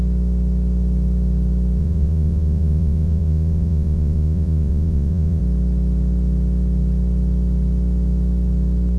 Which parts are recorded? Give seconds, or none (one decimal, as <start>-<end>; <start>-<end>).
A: 0.0-1.8; 5.4-9.0